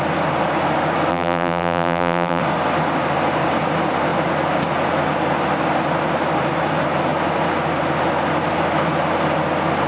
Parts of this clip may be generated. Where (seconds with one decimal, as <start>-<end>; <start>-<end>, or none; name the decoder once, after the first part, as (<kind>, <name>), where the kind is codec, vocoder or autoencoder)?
1.1-2.4 (vocoder, BigVGAN v2)